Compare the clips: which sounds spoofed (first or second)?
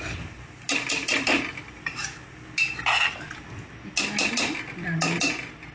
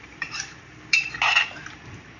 second